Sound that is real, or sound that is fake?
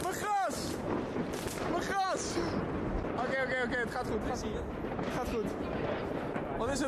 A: real